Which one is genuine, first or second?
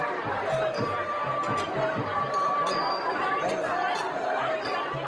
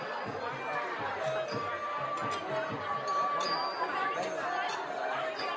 second